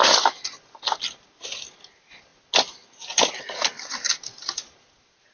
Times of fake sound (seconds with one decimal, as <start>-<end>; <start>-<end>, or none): none